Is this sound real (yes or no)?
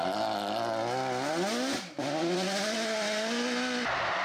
yes